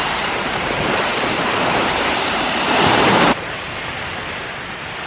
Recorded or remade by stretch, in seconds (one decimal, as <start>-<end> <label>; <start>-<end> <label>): 0.0-5.1 remade